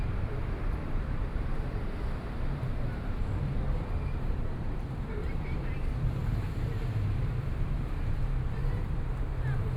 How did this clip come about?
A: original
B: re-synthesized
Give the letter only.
B